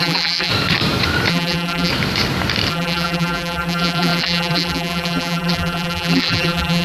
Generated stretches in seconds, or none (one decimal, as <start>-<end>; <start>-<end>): 0.0-0.5; 1.3-1.9; 2.7-6.8